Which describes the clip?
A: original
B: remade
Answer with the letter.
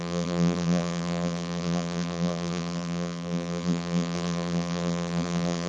B